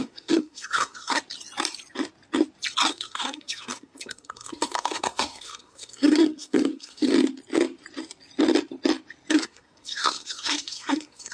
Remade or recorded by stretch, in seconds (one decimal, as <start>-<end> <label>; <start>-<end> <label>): 0.0-1.2 remade; 1.2-2.9 recorded; 2.9-7.1 remade; 7.1-9.3 recorded; 9.3-11.3 remade